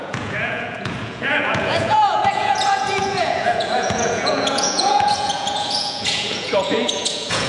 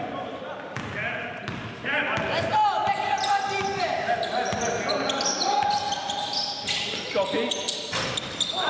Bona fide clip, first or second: second